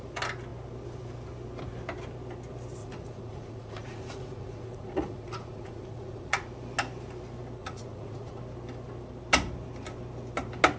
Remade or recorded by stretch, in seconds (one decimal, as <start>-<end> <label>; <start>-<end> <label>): 0.0-2.8 recorded; 2.8-6.5 remade; 6.5-7.6 recorded; 7.6-8.4 remade; 8.4-10.8 recorded